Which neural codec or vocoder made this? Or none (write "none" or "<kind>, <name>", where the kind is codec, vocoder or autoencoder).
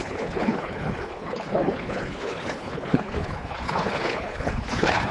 codec, HILCodec